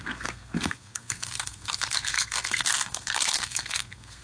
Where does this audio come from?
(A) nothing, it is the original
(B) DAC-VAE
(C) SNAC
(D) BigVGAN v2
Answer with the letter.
C